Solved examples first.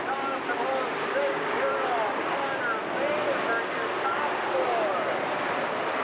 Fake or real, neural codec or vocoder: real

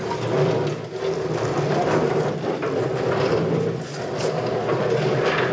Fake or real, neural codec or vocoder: real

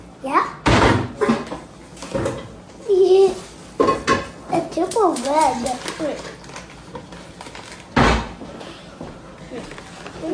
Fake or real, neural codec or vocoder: real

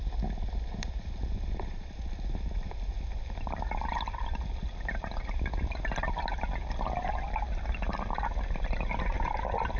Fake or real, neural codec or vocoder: real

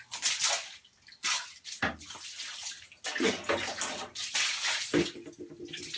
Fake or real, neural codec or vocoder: real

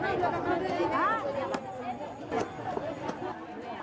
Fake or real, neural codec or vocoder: real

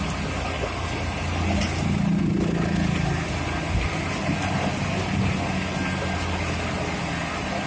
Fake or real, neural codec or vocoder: real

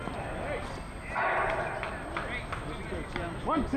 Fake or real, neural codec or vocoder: real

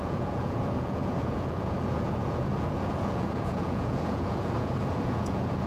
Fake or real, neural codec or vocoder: fake, vocoder, Vocos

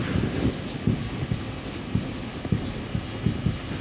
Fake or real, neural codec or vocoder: real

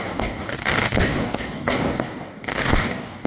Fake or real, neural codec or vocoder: fake, codec, DAC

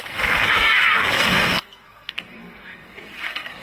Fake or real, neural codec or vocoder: fake, codec, SNAC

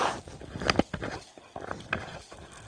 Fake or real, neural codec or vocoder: real